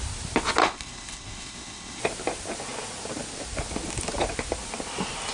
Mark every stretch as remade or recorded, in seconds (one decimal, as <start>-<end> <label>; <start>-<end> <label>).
0.0-0.6 recorded; 0.6-2.0 remade; 2.0-5.3 recorded